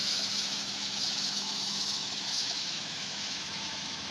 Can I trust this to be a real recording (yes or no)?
no